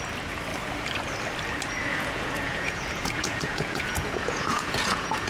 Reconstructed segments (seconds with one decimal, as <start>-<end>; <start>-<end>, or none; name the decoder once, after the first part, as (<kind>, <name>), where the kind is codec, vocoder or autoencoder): 1.9-5.3 (vocoder, Vocos)